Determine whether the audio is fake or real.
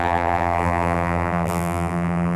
fake